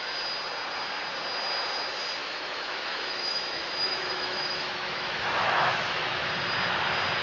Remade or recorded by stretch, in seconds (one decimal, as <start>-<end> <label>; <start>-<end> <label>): 0.0-2.2 recorded; 2.2-6.3 remade; 6.3-7.2 recorded